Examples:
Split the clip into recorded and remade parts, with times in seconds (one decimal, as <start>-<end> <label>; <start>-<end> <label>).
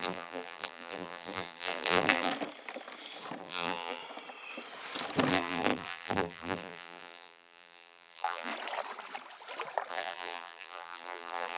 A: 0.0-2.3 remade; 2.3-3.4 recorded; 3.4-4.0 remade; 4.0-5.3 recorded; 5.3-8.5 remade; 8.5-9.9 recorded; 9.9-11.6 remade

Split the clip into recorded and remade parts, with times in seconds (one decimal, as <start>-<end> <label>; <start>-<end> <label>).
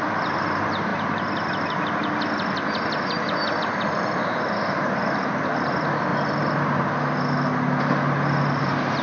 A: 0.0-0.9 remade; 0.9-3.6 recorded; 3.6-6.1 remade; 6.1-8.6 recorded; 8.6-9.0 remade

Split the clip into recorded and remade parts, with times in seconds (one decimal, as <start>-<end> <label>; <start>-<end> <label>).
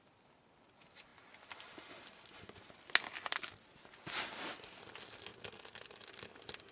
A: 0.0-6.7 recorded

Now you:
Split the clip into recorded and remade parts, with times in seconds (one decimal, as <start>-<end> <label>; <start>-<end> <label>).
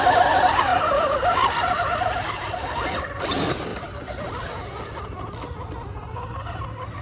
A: 0.0-7.0 recorded